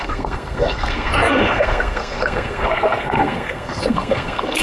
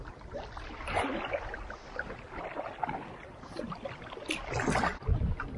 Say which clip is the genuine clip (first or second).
second